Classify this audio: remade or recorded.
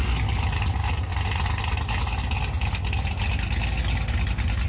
recorded